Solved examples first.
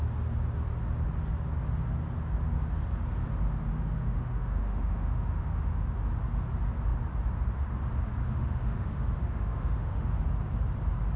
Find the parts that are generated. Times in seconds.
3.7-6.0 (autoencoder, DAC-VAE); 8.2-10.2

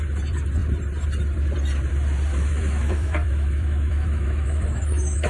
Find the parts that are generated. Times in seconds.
2.3-5.3 (autoencoder, DAC-VAE)

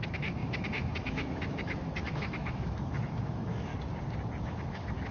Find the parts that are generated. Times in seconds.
0.0-3.7 (autoencoder, DAC-VAE); 4.4-5.1